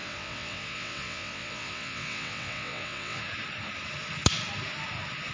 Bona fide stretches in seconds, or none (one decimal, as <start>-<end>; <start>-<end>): 3.2-5.3